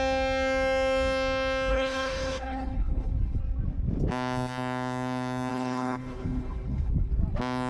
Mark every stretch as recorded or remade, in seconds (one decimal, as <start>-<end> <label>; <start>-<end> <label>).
0.0-1.7 recorded; 1.7-3.4 remade; 3.4-5.5 recorded; 5.5-7.1 remade; 7.1-7.7 recorded